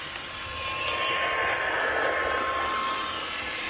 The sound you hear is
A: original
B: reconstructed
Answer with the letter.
A